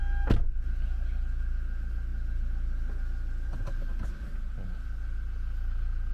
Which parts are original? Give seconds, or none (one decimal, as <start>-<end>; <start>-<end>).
0.0-6.1